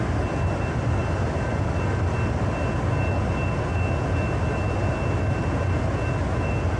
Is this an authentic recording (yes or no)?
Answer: yes